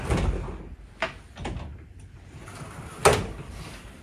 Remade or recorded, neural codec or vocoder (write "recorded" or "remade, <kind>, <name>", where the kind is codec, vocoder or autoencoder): recorded